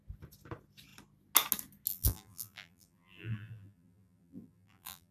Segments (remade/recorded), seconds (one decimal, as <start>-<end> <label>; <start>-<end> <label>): 0.0-1.9 recorded; 1.9-5.1 remade